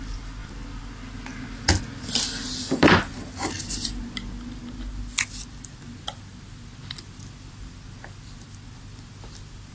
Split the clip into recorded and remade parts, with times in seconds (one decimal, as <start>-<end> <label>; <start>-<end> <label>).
0.0-9.7 recorded